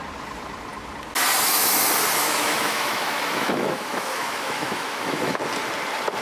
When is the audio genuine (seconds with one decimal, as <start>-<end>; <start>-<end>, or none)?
0.0-2.2; 5.4-6.2